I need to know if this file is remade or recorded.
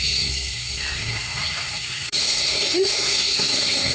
remade